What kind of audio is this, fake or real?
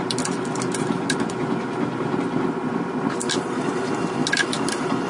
real